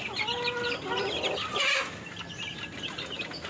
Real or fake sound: real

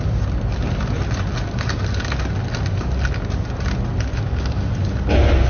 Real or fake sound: real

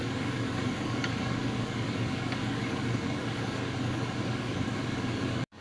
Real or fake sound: fake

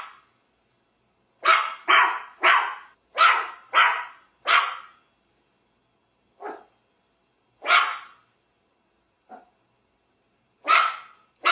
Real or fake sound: real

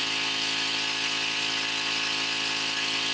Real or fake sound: real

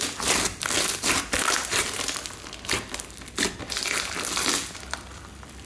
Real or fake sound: real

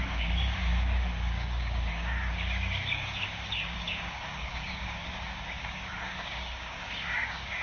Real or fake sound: fake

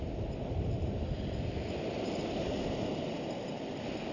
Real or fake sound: real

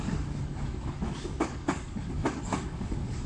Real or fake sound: fake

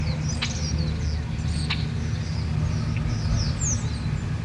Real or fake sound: real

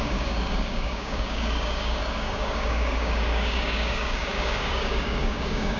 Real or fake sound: fake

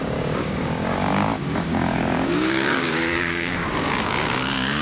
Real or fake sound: fake